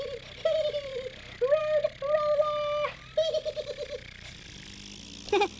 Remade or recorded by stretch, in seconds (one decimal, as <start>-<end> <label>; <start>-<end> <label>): 0.0-5.6 recorded